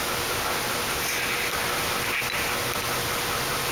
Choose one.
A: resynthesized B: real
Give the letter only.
B